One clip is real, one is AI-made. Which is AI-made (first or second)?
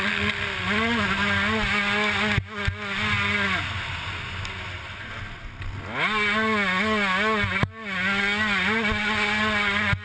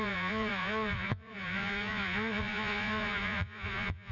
second